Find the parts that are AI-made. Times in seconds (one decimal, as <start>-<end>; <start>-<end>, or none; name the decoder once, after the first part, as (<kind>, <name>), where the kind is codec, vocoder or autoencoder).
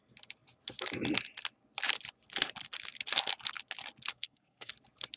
4.1-4.7 (codec, SNAC)